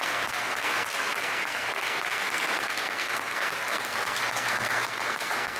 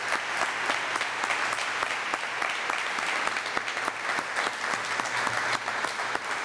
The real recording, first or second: second